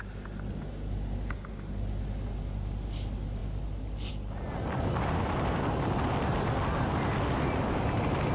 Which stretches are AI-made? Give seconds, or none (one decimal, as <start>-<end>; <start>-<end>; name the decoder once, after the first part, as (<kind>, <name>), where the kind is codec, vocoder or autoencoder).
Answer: none